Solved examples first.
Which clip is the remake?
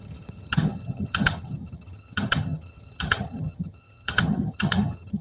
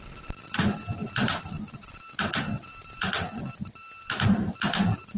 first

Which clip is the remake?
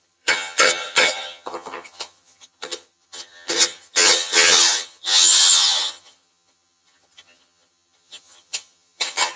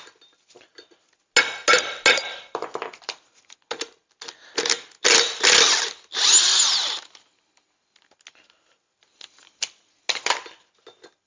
first